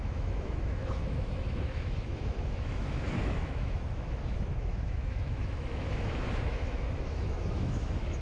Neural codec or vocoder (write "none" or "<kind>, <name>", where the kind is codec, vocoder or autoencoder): autoencoder, DAC-VAE